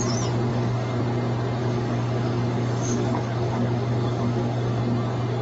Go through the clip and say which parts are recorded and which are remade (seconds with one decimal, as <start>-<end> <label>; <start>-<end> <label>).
0.0-0.5 recorded; 0.5-1.0 remade; 1.0-1.6 recorded; 1.6-4.8 remade; 4.8-5.4 recorded